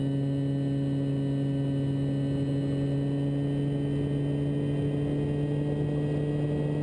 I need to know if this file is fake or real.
real